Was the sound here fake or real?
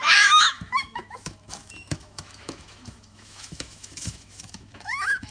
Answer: fake